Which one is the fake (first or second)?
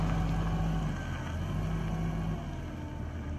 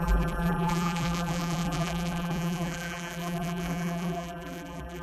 second